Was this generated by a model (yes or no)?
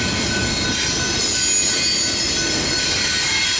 no